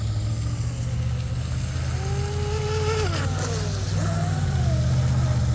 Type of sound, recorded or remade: recorded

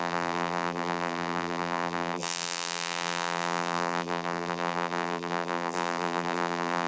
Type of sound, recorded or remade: remade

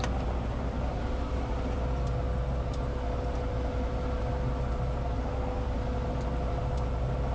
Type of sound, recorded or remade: recorded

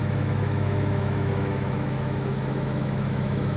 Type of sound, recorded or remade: remade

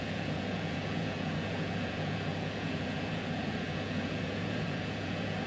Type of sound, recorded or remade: remade